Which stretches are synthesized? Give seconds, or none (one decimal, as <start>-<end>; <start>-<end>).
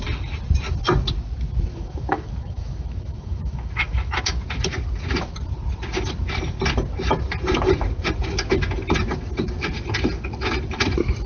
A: 1.7-4.2